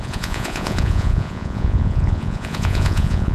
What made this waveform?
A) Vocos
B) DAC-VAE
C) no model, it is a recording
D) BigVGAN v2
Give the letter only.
A